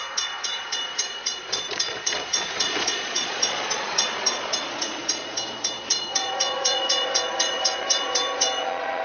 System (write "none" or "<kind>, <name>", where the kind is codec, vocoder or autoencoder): vocoder, Vocos